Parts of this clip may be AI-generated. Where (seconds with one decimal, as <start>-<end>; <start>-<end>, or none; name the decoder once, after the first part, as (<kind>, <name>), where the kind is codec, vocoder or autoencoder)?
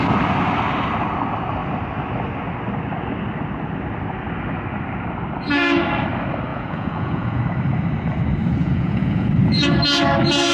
6.5-7.4 (vocoder, Vocos); 8.6-9.3